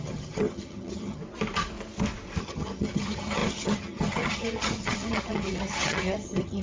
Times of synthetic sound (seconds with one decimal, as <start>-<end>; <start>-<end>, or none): 0.0-1.2; 2.4-6.6